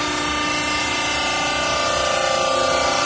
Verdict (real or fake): real